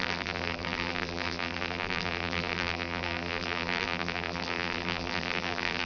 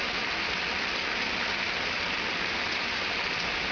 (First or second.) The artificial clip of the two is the first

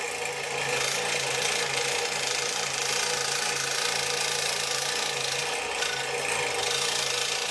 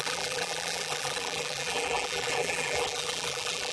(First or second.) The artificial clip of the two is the second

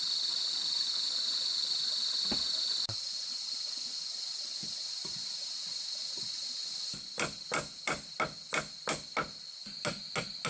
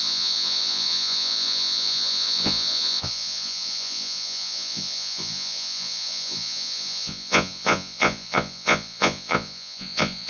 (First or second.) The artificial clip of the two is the second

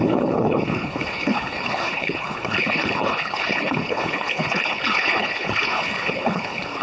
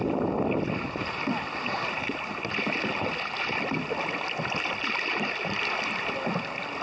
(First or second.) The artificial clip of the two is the first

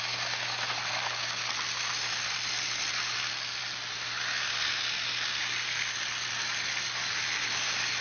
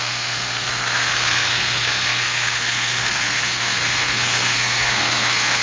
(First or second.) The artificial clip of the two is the second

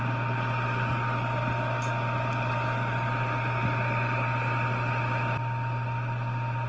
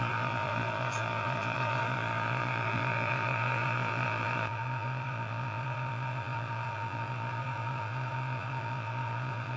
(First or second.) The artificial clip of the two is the second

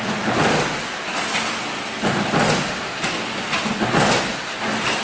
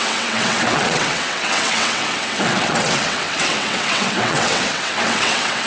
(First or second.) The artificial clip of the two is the second